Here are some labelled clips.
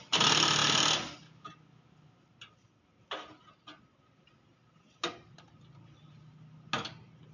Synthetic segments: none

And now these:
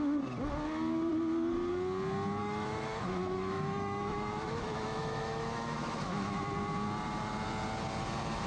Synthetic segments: 2.4-6.4 (autoencoder, DAC-VAE)

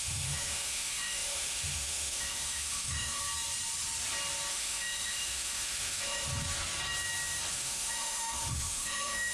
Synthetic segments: 0.0-3.2 (autoencoder, DAC-VAE); 4.5-6.3; 7.5-9.3